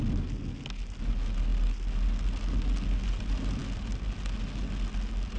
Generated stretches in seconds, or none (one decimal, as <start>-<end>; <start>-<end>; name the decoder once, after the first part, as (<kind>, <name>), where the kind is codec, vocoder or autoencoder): none